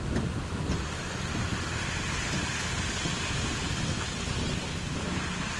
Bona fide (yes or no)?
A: yes